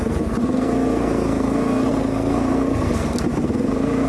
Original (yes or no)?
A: no